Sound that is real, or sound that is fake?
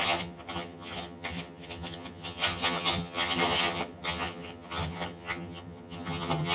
fake